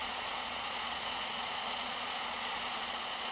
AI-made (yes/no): yes